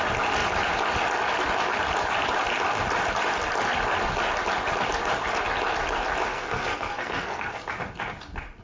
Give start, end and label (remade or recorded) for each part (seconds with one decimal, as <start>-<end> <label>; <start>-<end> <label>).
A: 0.0-6.3 recorded; 6.3-7.6 remade; 7.6-8.6 recorded